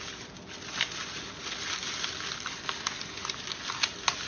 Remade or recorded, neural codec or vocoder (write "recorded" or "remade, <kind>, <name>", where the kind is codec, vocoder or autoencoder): recorded